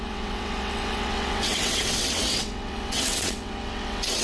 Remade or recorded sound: remade